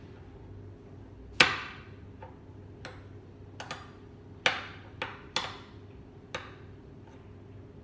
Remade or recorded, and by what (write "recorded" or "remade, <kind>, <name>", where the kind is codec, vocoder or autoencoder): recorded